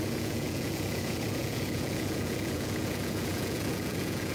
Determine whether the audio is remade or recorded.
remade